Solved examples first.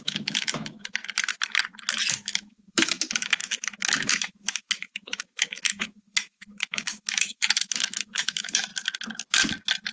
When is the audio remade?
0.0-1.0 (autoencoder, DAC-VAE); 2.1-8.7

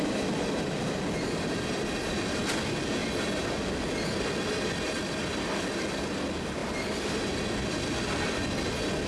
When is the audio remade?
none

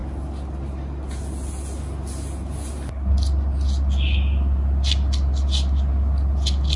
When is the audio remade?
none

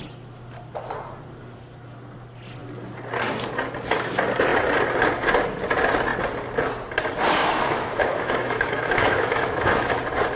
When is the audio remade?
7.4-9.9 (autoencoder, DAC-VAE)

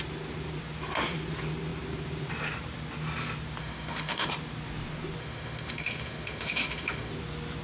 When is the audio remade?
3.6-4.3 (autoencoder, DAC-VAE); 5.2-7.1

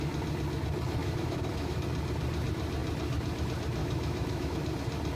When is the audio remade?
1.0-1.8 (autoencoder, DAC-VAE); 3.8-4.6